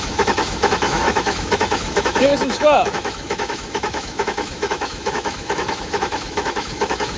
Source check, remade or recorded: remade